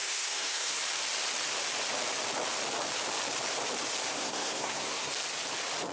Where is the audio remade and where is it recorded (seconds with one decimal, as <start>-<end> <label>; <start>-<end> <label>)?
0.0-0.8 remade; 0.8-4.1 recorded; 4.1-5.1 remade; 5.1-5.9 recorded